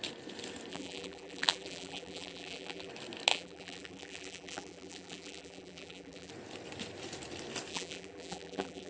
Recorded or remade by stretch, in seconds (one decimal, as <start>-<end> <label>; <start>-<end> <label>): 0.0-0.7 recorded; 0.7-2.9 remade; 2.9-3.3 recorded; 3.3-6.3 remade; 6.3-7.7 recorded; 7.7-8.9 remade